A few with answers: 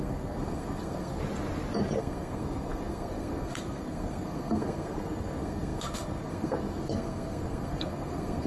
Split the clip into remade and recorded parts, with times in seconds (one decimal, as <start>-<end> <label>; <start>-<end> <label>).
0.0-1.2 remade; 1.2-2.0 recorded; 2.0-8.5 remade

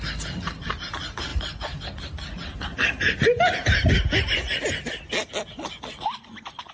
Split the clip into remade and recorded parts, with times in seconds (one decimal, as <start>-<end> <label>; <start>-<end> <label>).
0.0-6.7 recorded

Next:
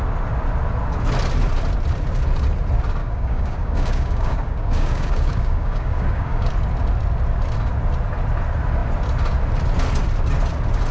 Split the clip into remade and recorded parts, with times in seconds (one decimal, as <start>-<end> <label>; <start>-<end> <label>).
0.0-3.0 recorded; 3.0-6.5 remade; 6.5-10.9 recorded